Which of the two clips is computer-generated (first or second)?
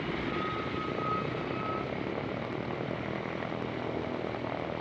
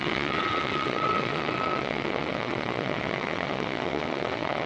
second